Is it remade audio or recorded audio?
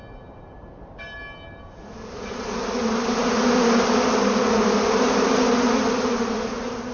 recorded